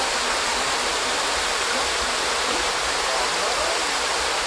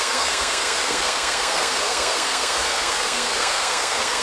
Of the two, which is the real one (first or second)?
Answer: first